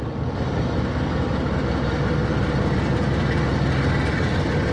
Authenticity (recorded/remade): recorded